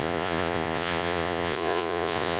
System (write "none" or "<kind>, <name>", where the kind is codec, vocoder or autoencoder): vocoder, Vocos